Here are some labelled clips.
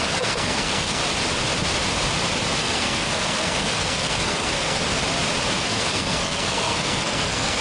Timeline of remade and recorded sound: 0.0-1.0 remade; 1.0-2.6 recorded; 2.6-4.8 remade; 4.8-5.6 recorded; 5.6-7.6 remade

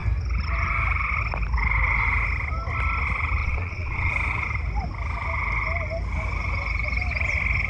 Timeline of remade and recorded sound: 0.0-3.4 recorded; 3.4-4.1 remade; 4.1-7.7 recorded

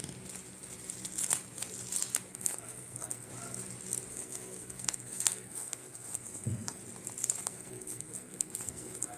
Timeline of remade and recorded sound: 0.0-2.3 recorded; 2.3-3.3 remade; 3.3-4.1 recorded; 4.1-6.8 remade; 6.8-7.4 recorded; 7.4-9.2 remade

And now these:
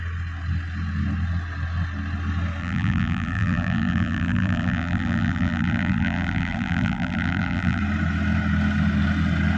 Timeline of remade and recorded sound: 0.0-2.6 recorded; 2.6-7.8 remade; 7.8-9.6 recorded

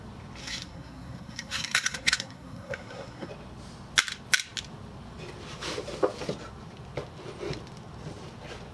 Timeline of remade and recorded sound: 0.0-0.4 recorded; 0.4-3.3 remade; 3.3-8.7 recorded

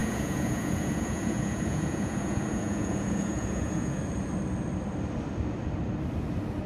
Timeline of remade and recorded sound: 0.0-4.0 remade; 4.0-6.7 recorded